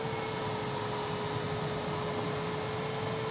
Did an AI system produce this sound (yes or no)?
no